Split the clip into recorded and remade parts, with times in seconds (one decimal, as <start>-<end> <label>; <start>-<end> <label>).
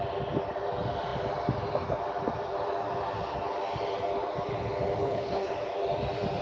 0.0-5.0 recorded; 5.0-5.5 remade; 5.5-6.4 recorded